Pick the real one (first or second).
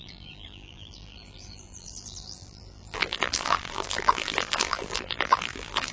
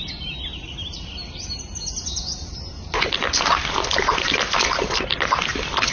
second